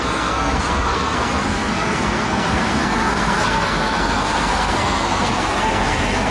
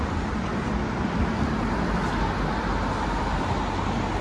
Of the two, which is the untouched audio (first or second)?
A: second